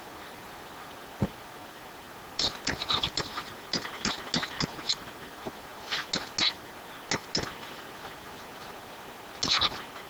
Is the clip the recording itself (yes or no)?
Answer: yes